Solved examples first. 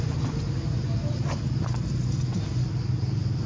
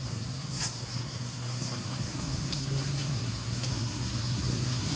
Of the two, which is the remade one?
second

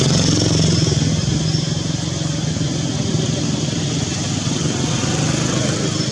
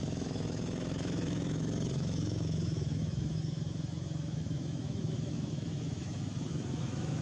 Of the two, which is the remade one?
second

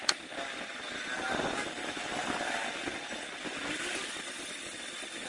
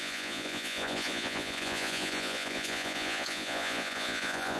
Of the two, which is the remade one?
second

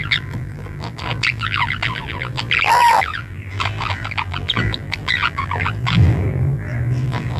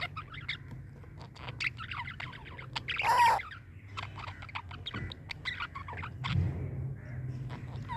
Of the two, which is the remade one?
first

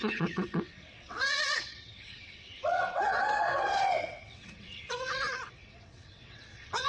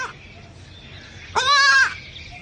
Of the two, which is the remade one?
first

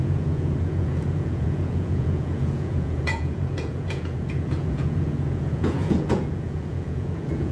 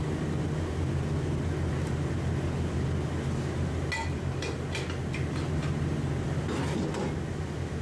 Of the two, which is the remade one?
first